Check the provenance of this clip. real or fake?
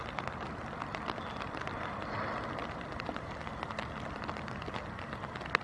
real